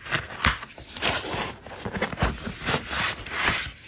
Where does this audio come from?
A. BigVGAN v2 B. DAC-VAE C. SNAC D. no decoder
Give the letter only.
D